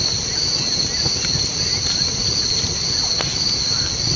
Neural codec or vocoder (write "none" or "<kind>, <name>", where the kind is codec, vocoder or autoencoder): none